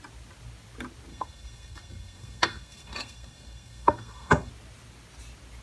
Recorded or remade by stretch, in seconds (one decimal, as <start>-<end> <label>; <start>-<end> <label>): 0.0-1.1 recorded; 1.1-4.5 remade; 4.5-5.6 recorded

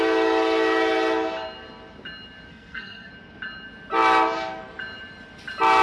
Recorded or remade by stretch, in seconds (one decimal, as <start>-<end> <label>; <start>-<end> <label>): 0.0-2.5 recorded; 2.5-3.1 remade; 3.1-5.8 recorded

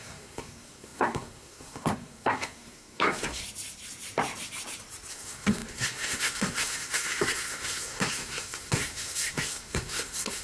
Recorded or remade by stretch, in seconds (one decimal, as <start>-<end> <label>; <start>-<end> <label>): 0.0-3.4 remade; 3.4-5.1 recorded; 5.1-10.4 remade

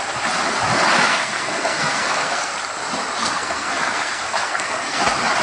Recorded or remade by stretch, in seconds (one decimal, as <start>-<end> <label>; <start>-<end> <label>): 0.0-1.1 recorded; 1.1-2.5 remade; 2.5-3.2 recorded; 3.2-5.0 remade; 5.0-5.4 recorded